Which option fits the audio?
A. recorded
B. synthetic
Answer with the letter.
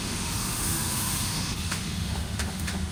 B